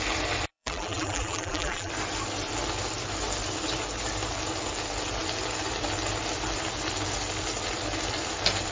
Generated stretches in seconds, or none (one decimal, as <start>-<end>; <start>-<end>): 0.5-1.9